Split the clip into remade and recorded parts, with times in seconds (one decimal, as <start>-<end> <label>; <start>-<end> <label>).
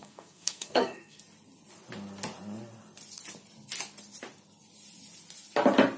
0.0-1.2 remade; 1.2-6.0 recorded